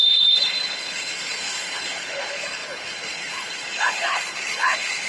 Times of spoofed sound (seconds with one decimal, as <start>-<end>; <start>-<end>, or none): 0.0-5.1